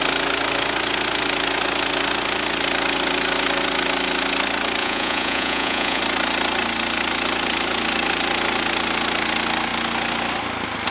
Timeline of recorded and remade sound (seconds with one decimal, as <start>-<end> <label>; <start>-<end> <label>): 0.0-4.8 recorded; 4.8-6.0 remade; 6.0-10.9 recorded